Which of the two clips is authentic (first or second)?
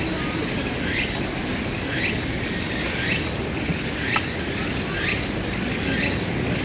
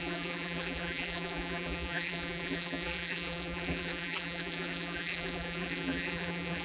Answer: first